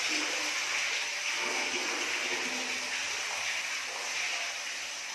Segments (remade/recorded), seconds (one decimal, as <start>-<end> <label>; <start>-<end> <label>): 0.0-1.4 recorded; 1.4-1.9 remade; 1.9-5.1 recorded